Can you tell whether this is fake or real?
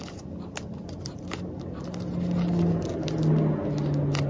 real